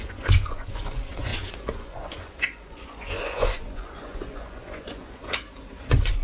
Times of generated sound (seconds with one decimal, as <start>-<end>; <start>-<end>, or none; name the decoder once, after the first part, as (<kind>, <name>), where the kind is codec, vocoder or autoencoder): 0.0-5.2 (vocoder, Vocos); 5.8-6.2